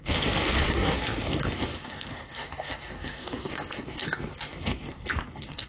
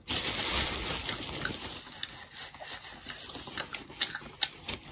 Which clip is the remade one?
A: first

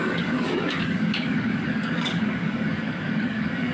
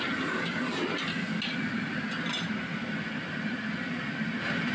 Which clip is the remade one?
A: first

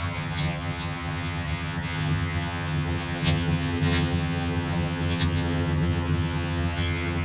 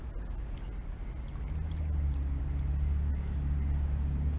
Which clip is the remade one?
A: first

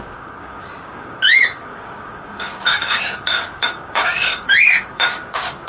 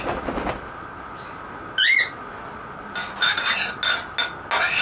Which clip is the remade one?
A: first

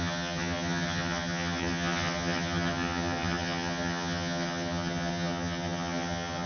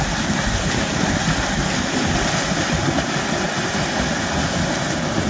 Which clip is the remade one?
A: first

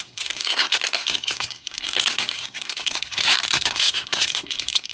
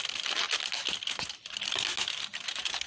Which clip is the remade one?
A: first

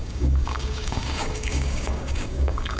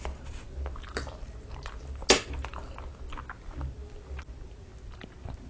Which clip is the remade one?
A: first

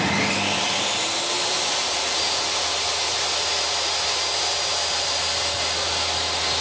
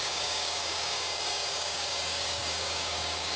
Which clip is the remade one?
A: second